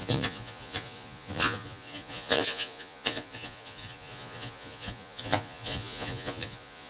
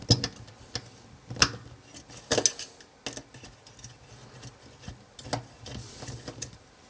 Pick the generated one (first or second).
first